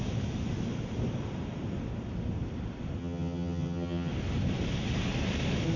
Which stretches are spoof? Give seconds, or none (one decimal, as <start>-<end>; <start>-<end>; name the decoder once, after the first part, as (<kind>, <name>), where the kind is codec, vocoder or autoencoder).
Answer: 3.0-4.1 (vocoder, HiFi-GAN)